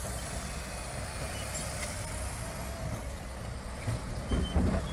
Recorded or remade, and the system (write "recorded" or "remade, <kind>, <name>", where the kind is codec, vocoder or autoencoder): recorded